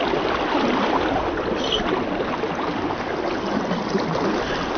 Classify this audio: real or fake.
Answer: real